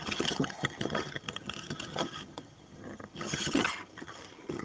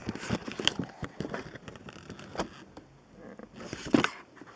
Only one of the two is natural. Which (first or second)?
second